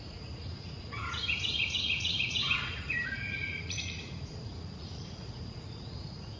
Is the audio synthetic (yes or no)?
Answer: yes